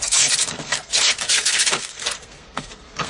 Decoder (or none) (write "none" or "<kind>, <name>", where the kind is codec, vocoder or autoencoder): codec, SNAC